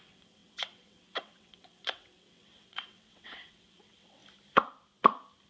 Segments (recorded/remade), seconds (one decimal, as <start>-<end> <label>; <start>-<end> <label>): 0.0-4.2 remade; 4.2-5.5 recorded